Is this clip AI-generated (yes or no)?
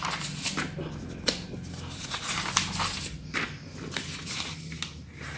no